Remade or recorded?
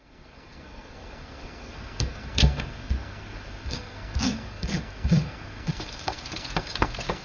remade